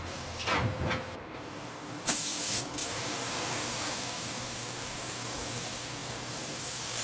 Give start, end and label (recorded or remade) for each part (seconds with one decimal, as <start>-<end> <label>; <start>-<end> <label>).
0.0-0.5 remade; 0.5-1.2 recorded; 1.2-7.0 remade